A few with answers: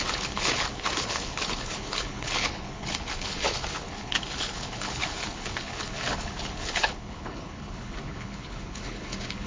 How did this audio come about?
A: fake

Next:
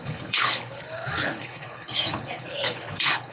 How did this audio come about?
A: fake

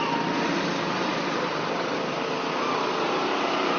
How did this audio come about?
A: real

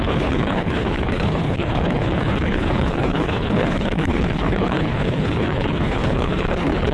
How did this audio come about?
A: fake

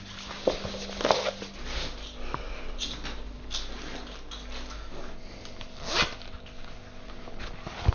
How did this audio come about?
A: real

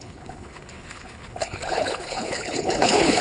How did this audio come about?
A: fake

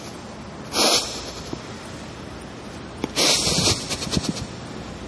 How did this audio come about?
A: real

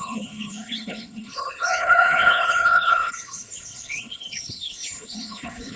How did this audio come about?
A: fake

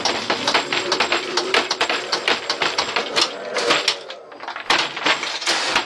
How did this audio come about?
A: real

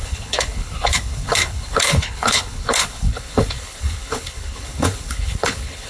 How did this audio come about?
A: fake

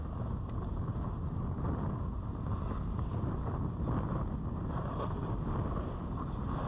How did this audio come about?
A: real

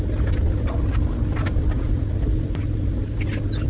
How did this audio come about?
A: real